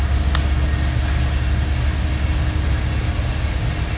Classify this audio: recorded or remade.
recorded